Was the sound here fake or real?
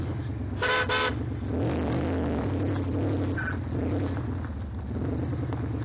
real